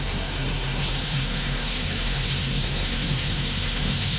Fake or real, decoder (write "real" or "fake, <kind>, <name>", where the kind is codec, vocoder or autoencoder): fake, codec, SNAC